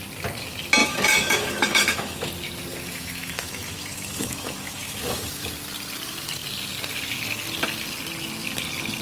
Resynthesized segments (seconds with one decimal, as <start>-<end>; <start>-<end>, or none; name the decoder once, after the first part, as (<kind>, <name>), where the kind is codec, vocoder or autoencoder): 0.8-2.3 (autoencoder, DAC-VAE); 2.7-5.5